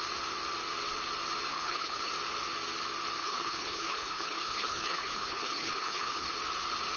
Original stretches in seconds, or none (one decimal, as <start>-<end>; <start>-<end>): 0.0-1.5; 2.1-3.2; 6.3-7.0